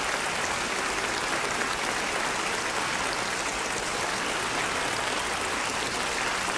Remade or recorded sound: recorded